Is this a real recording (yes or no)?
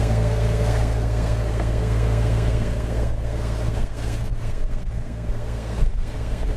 no